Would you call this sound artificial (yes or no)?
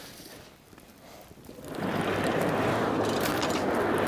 no